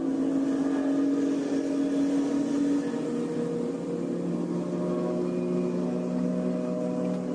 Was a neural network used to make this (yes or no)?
no